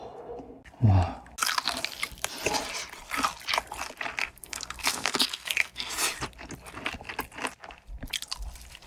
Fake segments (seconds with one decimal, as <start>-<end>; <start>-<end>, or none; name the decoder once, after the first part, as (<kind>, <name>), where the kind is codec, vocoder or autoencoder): 4.2-5.9 (codec, SNAC)